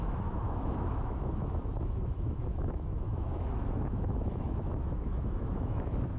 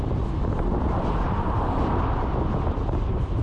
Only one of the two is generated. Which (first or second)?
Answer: first